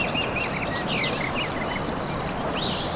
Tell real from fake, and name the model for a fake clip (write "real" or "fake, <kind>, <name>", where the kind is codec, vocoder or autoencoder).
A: real